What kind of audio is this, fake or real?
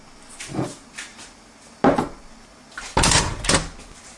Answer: real